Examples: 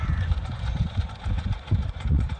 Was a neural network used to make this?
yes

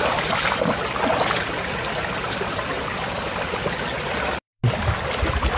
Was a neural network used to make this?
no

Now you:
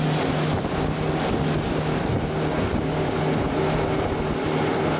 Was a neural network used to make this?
no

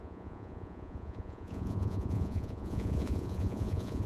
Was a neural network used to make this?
yes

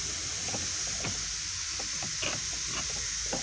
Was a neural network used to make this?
no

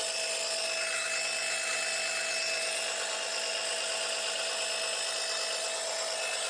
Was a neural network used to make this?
no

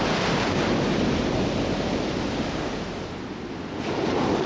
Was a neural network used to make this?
no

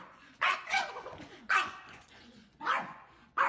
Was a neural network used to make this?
yes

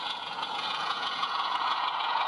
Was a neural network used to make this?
yes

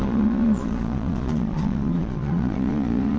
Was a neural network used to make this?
yes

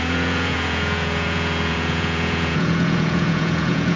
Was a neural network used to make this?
yes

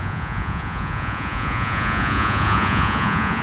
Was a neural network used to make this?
yes